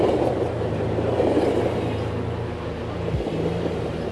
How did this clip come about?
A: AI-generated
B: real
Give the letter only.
B